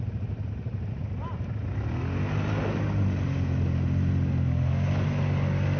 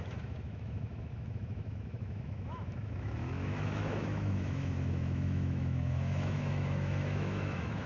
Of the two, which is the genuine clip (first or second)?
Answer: first